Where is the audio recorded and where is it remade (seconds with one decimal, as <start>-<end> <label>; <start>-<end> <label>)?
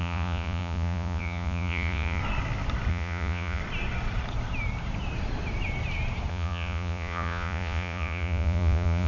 0.0-2.2 remade; 2.2-2.9 recorded; 2.9-3.6 remade; 3.6-6.3 recorded; 6.3-9.1 remade